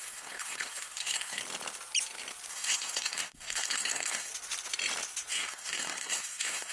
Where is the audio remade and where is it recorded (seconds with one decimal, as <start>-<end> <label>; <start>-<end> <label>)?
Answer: 0.0-1.4 remade; 1.4-2.5 recorded; 2.5-4.3 remade; 4.3-5.3 recorded; 5.3-6.7 remade